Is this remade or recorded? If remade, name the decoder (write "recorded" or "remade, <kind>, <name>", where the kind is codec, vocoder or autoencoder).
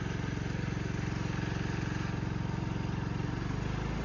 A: recorded